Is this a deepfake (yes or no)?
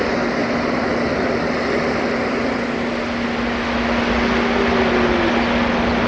no